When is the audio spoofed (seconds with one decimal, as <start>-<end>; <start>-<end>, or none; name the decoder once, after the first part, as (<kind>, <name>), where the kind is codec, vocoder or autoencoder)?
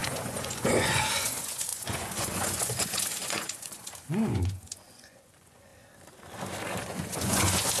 0.0-5.7 (vocoder, Vocos); 6.8-7.8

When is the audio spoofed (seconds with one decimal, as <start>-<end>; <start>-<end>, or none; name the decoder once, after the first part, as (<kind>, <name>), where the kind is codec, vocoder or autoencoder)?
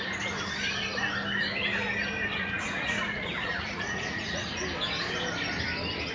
2.3-4.4 (vocoder, Vocos)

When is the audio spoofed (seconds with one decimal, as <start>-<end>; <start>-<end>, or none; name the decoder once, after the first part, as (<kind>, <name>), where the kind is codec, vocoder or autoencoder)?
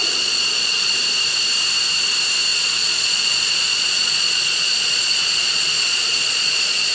0.0-0.9 (vocoder, Vocos); 2.5-6.9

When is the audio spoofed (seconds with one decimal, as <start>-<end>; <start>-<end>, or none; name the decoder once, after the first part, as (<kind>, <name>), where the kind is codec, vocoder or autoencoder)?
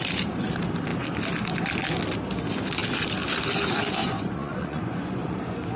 4.0-5.8 (vocoder, Vocos)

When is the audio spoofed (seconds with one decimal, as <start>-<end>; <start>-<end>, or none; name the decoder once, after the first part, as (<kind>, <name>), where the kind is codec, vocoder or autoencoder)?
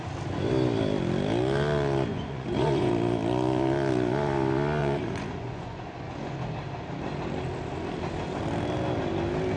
2.1-2.9 (vocoder, Vocos); 4.8-6.4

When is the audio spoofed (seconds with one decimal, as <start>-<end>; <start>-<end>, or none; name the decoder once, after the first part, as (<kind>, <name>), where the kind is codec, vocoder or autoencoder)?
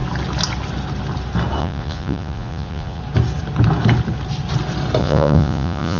1.6-3.0 (vocoder, Vocos); 5.0-6.0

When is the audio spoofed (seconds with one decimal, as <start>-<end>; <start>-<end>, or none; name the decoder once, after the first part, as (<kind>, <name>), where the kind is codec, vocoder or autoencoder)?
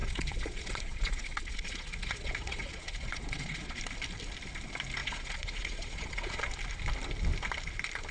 0.0-3.8 (vocoder, Vocos); 5.0-6.4